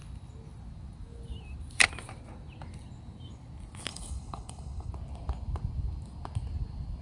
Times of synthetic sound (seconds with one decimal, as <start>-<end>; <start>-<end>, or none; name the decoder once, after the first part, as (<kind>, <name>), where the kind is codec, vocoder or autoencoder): 3.9-4.9 (codec, HILCodec)